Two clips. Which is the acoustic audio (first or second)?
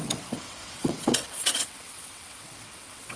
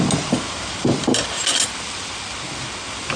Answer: second